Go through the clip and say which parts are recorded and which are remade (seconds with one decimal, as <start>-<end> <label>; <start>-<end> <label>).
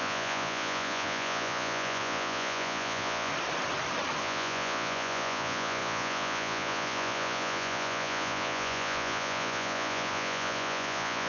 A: 0.0-3.3 remade; 3.3-4.2 recorded; 4.2-11.3 remade